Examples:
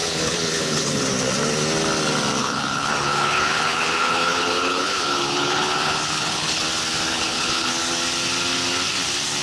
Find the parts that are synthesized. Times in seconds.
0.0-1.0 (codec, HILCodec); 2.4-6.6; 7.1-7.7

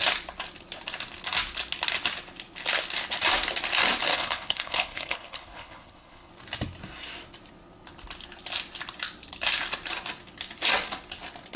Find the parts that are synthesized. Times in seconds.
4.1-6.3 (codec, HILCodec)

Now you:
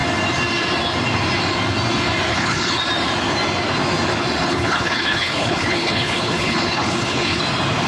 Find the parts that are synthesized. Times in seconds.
2.3-2.8 (codec, HILCodec); 4.4-7.4

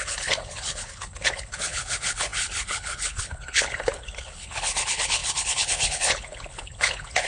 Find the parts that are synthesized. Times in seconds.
0.0-7.3 (codec, HILCodec)

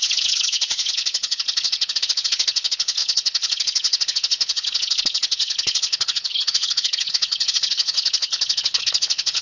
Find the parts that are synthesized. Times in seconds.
0.0-9.4 (codec, HILCodec)

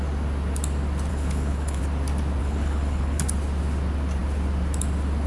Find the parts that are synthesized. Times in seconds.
1.1-1.8 (codec, HILCodec); 2.4-3.2

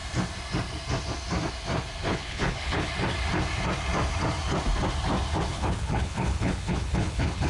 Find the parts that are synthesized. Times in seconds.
2.1-2.9 (codec, HILCodec); 5.5-7.5